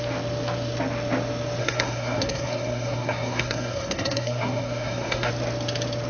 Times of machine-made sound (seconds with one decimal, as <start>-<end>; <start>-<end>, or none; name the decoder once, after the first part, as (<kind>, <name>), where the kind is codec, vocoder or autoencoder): 1.6-5.3 (codec, SNAC)